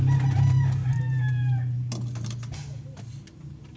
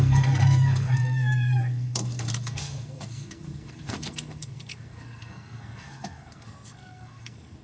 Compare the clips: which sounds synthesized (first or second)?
second